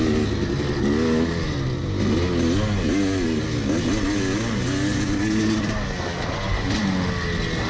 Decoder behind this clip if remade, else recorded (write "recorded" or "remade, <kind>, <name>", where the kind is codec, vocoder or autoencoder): recorded